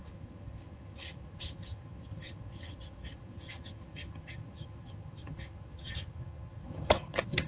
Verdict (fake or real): fake